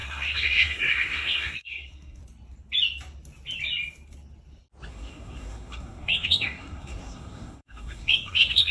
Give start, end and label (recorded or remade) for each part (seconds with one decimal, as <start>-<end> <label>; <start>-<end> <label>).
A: 0.0-2.2 remade; 2.2-4.9 recorded; 4.9-8.7 remade